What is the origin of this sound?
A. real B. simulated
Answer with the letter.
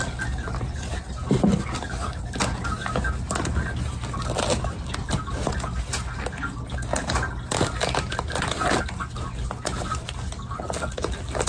A